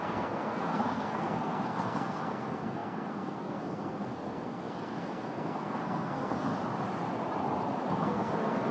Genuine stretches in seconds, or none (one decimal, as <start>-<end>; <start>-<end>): 6.5-7.9